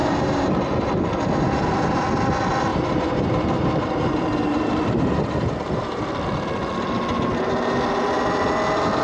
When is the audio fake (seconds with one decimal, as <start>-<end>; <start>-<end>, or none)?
0.0-0.9; 2.7-6.0